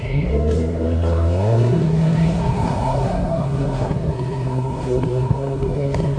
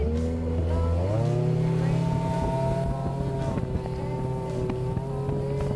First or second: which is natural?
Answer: second